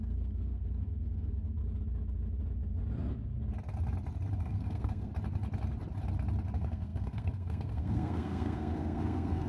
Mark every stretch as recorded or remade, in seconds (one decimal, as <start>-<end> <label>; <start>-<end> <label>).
0.0-1.6 remade; 1.6-4.4 recorded; 4.4-5.1 remade; 5.1-6.5 recorded; 6.5-9.5 remade